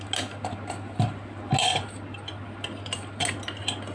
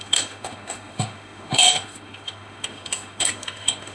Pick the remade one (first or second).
second